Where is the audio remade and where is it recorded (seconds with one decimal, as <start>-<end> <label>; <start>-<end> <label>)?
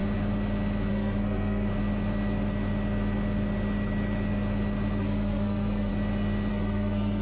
0.0-0.9 recorded; 0.9-1.7 remade; 1.7-5.0 recorded; 5.0-5.9 remade; 5.9-6.5 recorded; 6.5-7.2 remade